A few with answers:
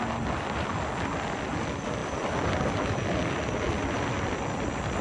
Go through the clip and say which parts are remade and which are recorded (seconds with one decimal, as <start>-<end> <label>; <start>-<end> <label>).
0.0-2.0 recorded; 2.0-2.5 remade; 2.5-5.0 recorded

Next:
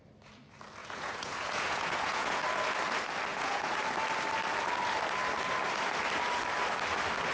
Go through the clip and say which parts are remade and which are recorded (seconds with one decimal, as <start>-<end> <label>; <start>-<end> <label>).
0.0-0.8 recorded; 0.8-2.4 remade; 2.4-3.3 recorded; 3.3-3.8 remade; 3.8-7.3 recorded

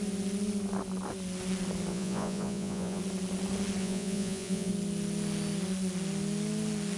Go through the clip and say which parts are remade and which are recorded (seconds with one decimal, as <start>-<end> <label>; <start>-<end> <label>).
0.0-1.9 recorded; 1.9-3.0 remade; 3.0-3.8 recorded; 3.8-4.7 remade; 4.7-7.0 recorded

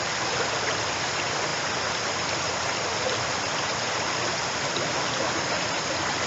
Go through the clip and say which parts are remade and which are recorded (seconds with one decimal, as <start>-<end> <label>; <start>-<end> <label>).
0.0-6.3 recorded